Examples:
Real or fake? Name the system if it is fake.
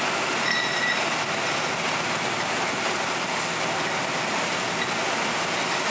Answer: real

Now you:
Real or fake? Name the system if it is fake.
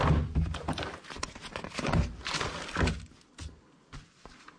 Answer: real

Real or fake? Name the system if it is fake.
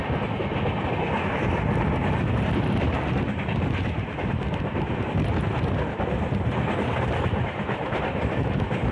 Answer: real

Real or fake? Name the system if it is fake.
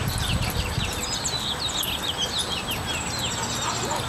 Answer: real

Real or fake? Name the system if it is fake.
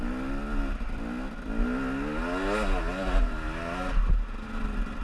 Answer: real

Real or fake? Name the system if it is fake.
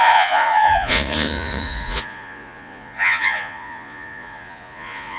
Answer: fake, vocoder, Vocos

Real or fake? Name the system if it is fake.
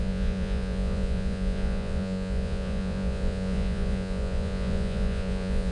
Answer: fake, vocoder, Vocos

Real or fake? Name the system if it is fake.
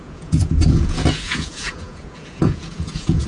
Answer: fake, vocoder, Vocos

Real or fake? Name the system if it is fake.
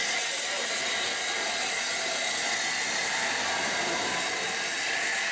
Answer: real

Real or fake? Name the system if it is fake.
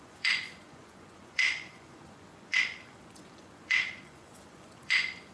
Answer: fake, vocoder, Vocos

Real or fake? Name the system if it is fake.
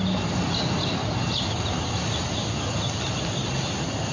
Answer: real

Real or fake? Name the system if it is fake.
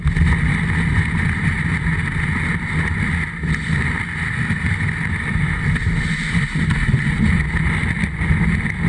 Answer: real